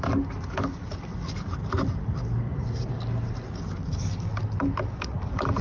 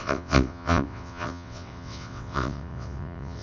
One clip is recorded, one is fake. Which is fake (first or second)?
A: second